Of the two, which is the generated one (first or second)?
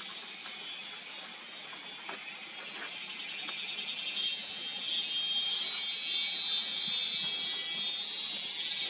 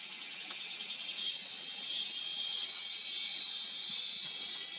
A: second